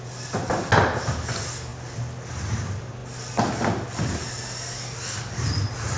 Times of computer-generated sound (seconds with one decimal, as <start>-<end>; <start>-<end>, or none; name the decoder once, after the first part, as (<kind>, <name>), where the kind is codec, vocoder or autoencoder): none